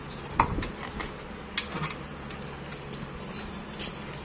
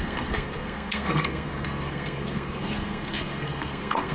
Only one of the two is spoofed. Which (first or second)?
second